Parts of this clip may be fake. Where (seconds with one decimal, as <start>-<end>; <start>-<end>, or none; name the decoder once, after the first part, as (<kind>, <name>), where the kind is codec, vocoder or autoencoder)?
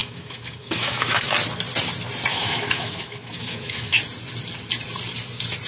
0.0-1.3 (autoencoder, DAC-VAE); 2.3-4.0